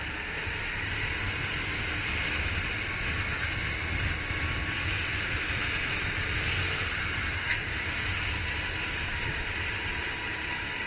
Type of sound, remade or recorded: recorded